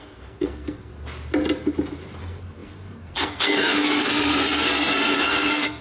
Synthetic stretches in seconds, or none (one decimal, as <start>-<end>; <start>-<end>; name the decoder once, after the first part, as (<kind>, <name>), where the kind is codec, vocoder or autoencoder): 0.0-0.9 (codec, SNAC); 2.2-5.8